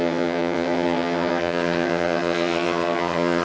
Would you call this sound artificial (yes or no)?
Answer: yes